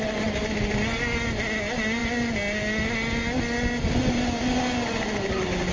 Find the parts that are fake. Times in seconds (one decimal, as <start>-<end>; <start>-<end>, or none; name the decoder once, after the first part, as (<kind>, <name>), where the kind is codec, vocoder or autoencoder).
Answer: none